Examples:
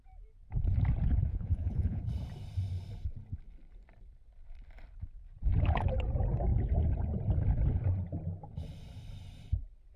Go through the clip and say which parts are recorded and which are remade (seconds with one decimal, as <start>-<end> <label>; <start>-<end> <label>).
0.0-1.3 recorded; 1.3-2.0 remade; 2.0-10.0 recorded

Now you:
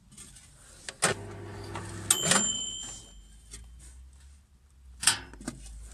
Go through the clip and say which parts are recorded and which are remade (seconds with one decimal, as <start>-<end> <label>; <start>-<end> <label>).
0.0-5.9 recorded

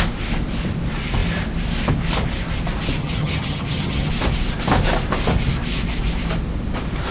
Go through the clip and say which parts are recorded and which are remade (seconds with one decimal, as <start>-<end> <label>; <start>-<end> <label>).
0.0-3.0 recorded; 3.0-4.1 remade; 4.1-7.1 recorded

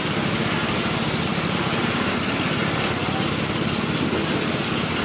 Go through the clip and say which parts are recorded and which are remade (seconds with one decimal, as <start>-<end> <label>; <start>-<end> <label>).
0.0-5.0 recorded

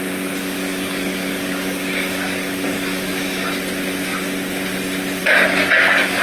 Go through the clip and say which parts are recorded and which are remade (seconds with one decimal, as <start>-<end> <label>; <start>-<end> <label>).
0.0-0.4 recorded; 0.4-3.5 remade; 3.5-5.2 recorded; 5.2-6.2 remade